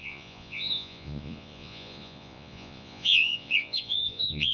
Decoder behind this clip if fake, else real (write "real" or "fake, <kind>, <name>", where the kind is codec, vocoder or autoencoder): fake, vocoder, Vocos